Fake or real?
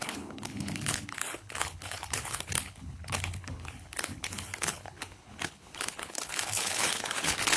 fake